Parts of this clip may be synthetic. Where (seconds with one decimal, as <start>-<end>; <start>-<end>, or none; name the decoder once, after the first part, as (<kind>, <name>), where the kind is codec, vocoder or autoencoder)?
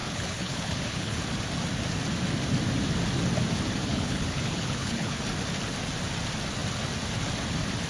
0.0-1.2 (codec, HILCodec); 3.8-5.2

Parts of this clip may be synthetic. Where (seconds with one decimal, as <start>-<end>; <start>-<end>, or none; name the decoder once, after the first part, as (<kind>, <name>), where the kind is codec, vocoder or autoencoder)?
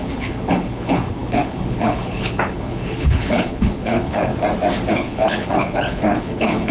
0.0-4.3 (codec, HILCodec); 4.9-6.7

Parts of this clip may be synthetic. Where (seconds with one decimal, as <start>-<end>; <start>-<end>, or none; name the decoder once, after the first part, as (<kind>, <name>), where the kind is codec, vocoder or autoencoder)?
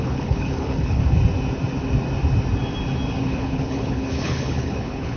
0.0-1.0 (codec, HILCodec); 3.2-5.2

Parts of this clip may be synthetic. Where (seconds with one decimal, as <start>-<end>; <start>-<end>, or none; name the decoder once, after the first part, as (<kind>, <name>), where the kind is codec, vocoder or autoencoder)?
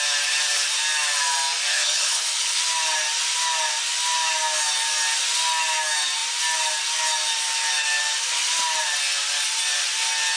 1.7-2.6 (codec, HILCodec)